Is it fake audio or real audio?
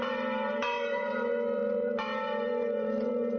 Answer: fake